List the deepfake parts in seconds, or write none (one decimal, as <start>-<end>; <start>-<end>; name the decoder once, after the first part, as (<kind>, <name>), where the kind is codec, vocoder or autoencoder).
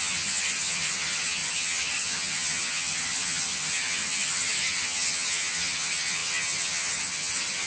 0.0-7.7 (vocoder, HiFi-GAN)